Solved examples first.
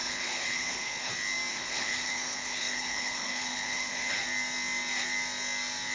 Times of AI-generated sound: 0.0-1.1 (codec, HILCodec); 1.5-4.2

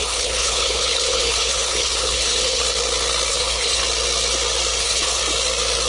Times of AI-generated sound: 0.0-2.6 (codec, HILCodec); 3.3-3.8; 4.8-5.2